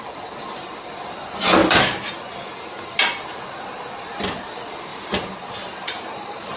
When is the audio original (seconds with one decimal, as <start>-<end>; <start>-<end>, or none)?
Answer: 0.0-4.9

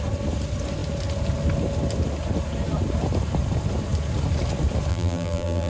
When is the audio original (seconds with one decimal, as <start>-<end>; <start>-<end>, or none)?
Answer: 0.0-4.9

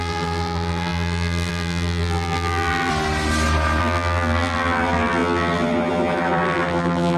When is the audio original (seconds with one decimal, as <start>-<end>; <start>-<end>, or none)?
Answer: 2.9-3.8

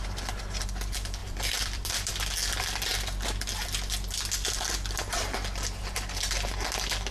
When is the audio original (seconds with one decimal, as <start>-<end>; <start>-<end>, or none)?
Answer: 0.0-1.2; 2.1-7.1

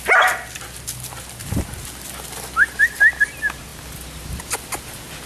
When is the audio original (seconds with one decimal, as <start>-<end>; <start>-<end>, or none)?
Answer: 0.0-5.3

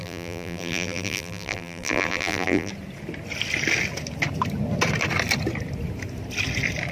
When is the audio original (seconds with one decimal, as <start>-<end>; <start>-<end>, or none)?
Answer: 2.7-6.9